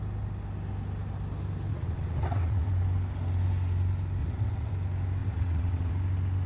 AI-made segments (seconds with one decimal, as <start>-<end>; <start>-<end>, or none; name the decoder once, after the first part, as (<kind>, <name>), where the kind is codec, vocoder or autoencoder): 1.7-2.7 (vocoder, WaveNeXt); 4.2-4.7; 5.2-5.9